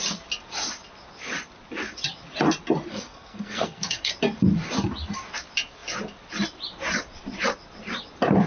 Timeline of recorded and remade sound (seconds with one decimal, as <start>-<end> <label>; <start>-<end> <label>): 0.0-2.9 recorded; 2.9-4.1 remade; 4.1-8.5 recorded